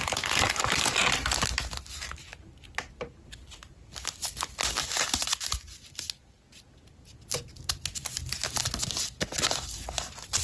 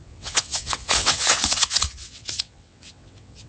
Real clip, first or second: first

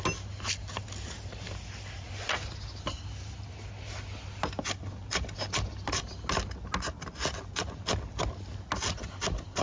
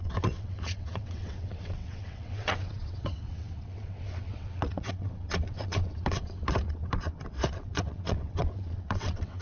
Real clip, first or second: first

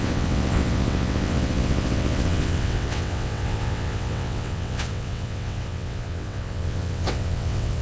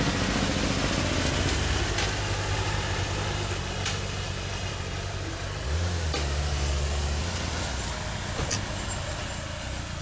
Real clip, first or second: second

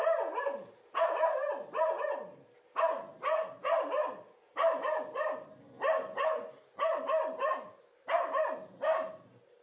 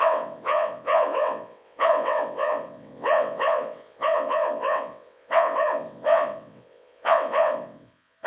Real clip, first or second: first